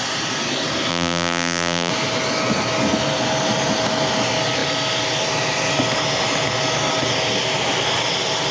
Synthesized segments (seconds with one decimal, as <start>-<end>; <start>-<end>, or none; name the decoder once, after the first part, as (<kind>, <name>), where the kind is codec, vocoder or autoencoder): 0.9-1.9 (vocoder, BigVGAN v2)